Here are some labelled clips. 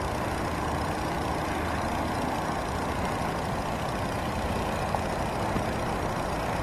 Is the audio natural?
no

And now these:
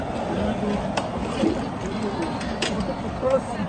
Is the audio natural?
yes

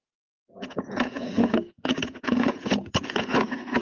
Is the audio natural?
no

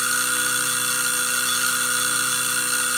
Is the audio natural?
yes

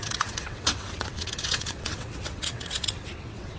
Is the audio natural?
no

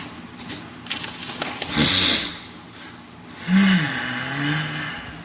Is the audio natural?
yes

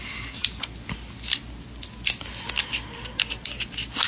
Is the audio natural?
yes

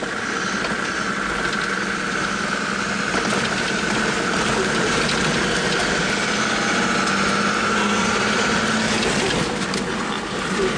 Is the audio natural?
yes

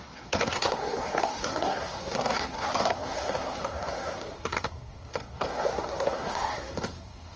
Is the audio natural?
no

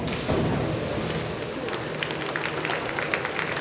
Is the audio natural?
yes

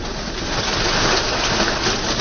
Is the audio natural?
no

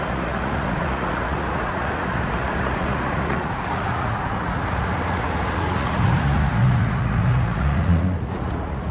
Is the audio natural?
no